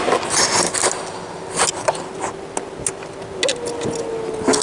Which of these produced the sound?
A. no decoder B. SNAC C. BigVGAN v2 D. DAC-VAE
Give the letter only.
A